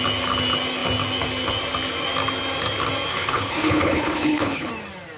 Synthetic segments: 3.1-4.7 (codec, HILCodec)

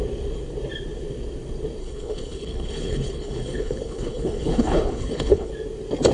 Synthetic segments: 1.8-5.5 (codec, HILCodec)

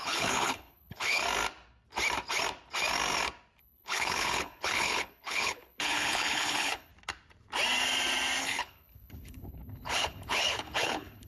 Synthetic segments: 0.0-1.2 (codec, HILCodec); 3.6-6.9; 8.4-11.3

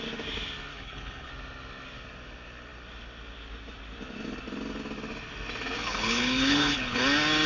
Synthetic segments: 0.7-1.3 (codec, HILCodec); 5.8-7.0

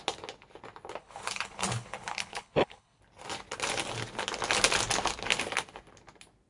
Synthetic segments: 1.0-3.0 (codec, HILCodec)

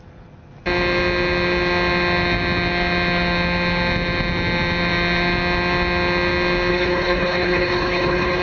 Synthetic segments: 6.7-8.4 (codec, HILCodec)

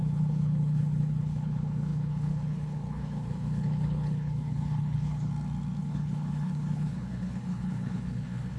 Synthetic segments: 0.0-5.3 (codec, HILCodec); 5.8-8.6